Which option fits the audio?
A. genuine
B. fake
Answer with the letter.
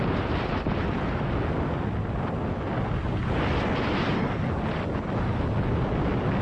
A